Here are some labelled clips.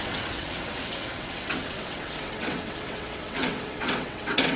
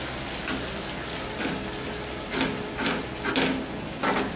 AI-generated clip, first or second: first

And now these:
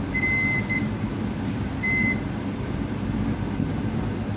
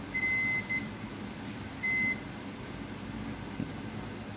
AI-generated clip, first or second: first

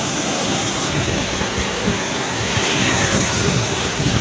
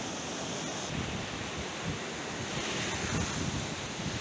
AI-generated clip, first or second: first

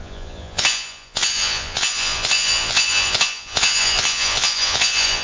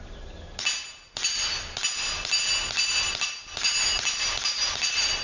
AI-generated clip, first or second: first